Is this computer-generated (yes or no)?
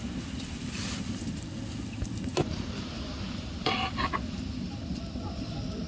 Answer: no